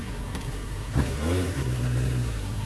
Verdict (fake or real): fake